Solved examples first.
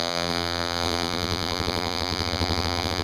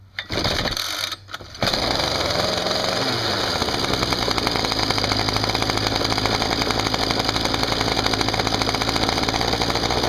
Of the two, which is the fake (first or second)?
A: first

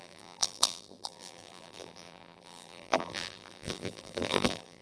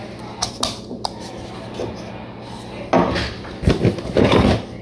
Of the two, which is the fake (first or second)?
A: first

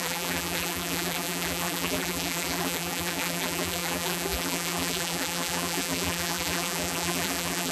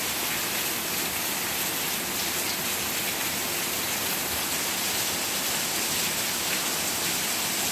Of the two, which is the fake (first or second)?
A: first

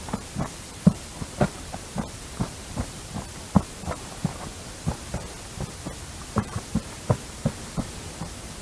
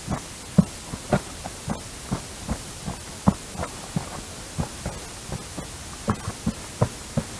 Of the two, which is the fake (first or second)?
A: first